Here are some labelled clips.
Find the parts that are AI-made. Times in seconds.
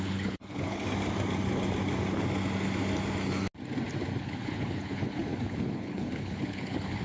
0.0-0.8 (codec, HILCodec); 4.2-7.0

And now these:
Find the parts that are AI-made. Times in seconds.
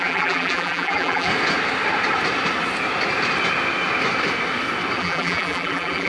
0.0-1.3 (vocoder, BigVGAN v2); 5.0-6.1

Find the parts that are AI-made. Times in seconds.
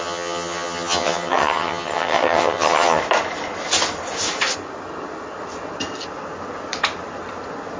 0.0-3.0 (vocoder, HiFi-GAN)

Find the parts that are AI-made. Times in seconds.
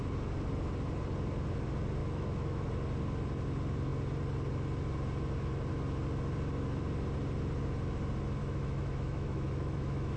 2.0-2.7 (autoencoder, DAC-VAE); 8.4-10.2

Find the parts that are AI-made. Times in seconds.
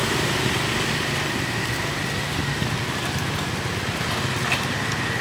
none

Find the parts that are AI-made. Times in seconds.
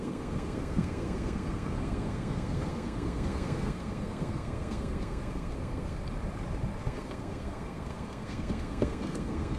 0.0-6.0 (codec, SNAC); 6.8-9.6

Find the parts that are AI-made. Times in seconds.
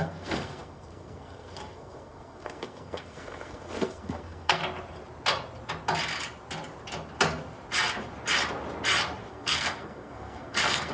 0.0-4.6 (codec, SNAC); 9.3-10.9